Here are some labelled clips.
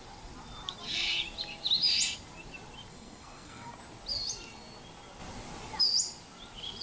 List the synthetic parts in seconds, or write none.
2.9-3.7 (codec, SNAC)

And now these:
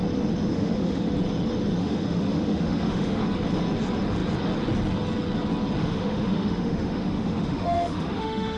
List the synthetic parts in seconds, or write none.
0.5-1.1 (autoencoder, DAC-VAE); 1.8-3.2; 5.8-8.6

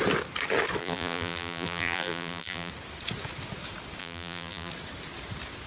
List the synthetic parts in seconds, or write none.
0.8-2.7 (vocoder, BigVGAN v2); 4.0-4.7